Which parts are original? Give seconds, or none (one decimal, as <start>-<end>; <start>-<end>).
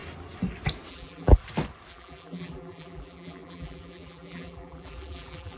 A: 0.0-0.9; 1.4-1.9